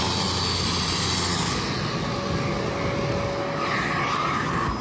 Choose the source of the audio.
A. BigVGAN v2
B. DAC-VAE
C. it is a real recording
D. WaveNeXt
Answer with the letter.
C